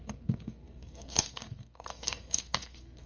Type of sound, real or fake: fake